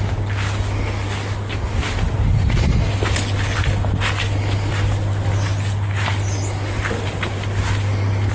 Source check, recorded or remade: recorded